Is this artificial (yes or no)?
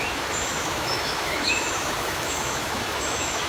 yes